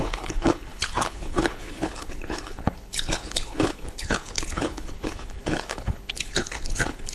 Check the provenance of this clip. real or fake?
fake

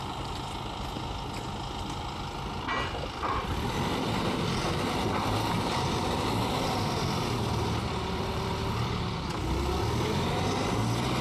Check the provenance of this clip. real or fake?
real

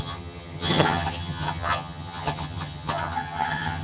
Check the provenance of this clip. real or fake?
fake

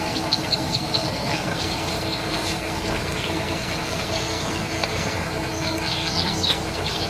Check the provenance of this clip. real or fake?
fake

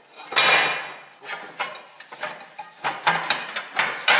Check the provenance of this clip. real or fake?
real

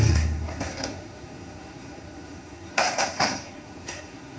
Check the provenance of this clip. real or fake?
fake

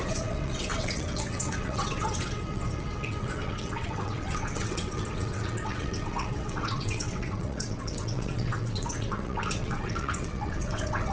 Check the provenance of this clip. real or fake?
fake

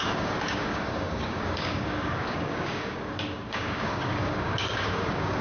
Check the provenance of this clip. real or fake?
fake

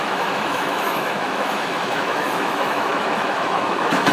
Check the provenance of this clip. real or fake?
fake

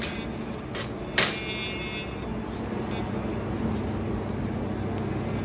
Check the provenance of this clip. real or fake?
real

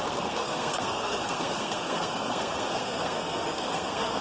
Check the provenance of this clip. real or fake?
fake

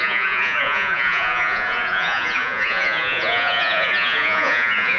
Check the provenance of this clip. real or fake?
fake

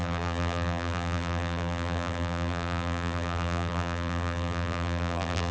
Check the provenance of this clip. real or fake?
fake